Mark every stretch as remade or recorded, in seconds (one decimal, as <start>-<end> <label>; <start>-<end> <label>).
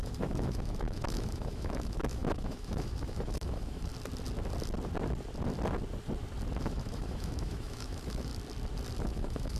0.0-3.9 remade; 3.9-6.6 recorded; 6.6-8.3 remade; 8.3-9.0 recorded; 9.0-9.6 remade